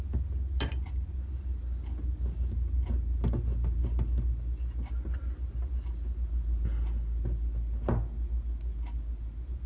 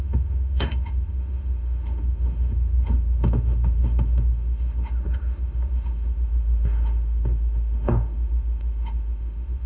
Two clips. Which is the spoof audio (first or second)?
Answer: second